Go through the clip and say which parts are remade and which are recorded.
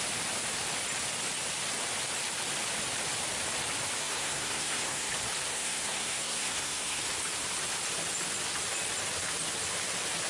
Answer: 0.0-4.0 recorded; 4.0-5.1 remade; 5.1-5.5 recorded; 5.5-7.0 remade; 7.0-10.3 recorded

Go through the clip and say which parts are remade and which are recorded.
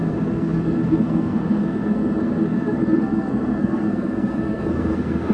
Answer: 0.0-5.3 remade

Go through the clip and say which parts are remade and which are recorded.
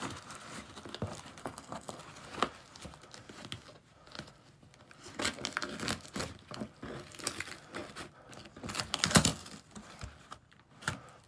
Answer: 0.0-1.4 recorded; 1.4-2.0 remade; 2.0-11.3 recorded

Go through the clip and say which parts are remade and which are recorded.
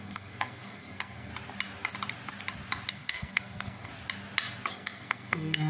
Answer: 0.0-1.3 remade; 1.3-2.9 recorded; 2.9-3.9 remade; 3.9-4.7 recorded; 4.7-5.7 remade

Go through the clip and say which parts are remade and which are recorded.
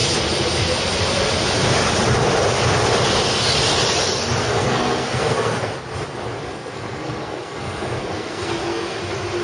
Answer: 0.0-4.4 recorded; 4.4-5.7 remade; 5.7-6.5 recorded; 6.5-9.0 remade; 9.0-9.4 recorded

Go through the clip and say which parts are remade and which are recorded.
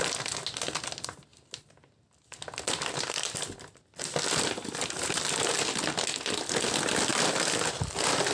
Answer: 0.0-8.3 recorded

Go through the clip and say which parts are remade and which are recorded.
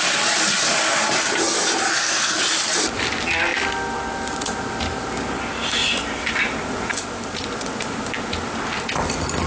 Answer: 0.0-1.9 recorded; 1.9-2.4 remade; 2.4-9.5 recorded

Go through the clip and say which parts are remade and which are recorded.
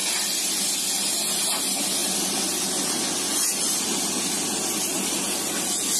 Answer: 0.0-6.0 recorded